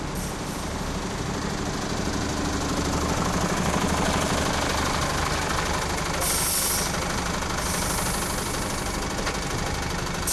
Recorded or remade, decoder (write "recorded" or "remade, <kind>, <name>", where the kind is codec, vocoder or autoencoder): recorded